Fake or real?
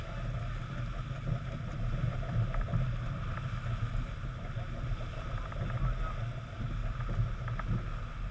real